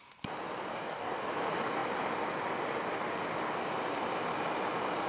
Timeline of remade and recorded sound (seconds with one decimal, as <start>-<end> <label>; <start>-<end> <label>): 0.0-0.7 recorded; 0.7-1.3 remade; 1.3-5.1 recorded